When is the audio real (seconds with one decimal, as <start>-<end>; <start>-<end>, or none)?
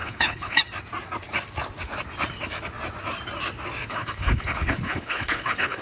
0.6-3.8